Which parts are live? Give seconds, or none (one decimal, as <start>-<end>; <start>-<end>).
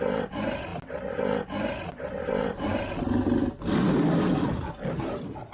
0.7-1.9; 2.7-4.9